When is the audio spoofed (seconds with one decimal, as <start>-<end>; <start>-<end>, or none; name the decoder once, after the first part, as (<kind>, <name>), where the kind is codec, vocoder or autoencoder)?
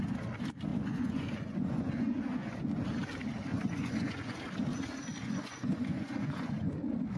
0.7-2.6 (vocoder, Vocos); 3.5-4.4; 5.2-6.8